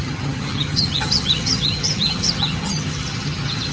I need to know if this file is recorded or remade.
remade